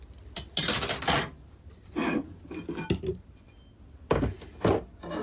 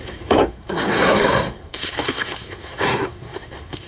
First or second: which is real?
first